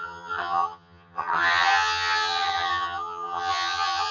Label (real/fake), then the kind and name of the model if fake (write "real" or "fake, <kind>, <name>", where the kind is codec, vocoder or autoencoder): fake, vocoder, HiFi-GAN